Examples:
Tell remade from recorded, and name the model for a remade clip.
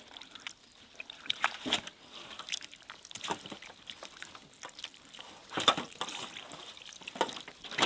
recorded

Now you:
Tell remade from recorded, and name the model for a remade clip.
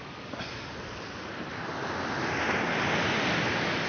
recorded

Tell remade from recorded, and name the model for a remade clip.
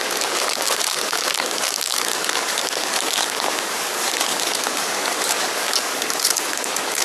remade, codec, DAC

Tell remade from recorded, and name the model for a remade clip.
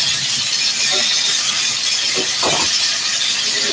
recorded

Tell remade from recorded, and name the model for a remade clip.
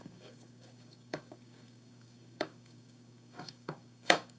remade, codec, DAC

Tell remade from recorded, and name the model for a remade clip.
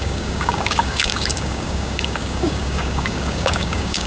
remade, codec, DAC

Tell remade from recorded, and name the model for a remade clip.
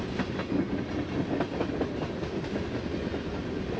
recorded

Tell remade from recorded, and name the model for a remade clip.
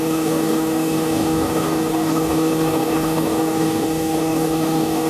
remade, codec, DAC